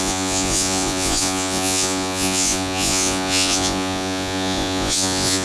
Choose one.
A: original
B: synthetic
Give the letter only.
B